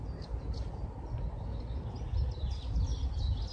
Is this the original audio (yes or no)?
yes